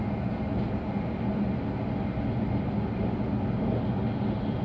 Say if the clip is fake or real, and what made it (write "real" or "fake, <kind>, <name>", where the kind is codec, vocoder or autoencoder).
real